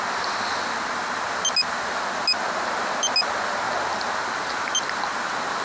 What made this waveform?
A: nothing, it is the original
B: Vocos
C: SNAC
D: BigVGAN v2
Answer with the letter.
A